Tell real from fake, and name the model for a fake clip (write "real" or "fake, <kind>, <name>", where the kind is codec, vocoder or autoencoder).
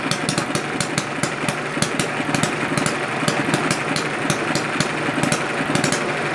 real